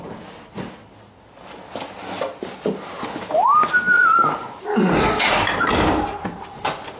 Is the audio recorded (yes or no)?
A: yes